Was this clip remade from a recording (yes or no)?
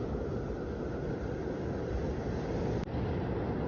no